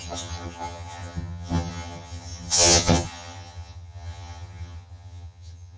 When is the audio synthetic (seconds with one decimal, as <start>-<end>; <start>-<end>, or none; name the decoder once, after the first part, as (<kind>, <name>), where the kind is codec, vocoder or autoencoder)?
0.0-5.8 (vocoder, HiFi-GAN)